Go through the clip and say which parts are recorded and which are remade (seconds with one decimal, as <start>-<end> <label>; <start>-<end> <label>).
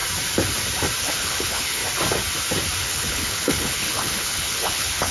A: 0.0-1.0 recorded; 1.0-1.8 remade; 1.8-2.8 recorded; 2.8-5.1 remade